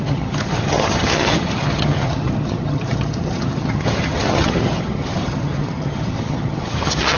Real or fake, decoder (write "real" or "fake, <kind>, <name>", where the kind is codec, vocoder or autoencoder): fake, vocoder, HiFi-GAN